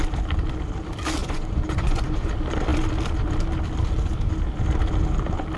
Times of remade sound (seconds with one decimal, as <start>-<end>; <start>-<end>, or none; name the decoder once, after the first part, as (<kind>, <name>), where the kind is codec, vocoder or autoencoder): 1.2-2.3 (vocoder, Vocos)